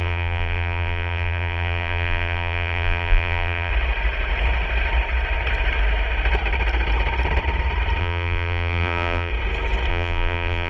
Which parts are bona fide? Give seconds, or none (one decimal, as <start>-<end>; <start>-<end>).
3.7-8.0; 9.3-9.9